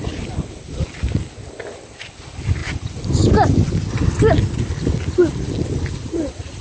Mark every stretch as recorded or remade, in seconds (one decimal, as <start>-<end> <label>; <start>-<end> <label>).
0.0-6.6 recorded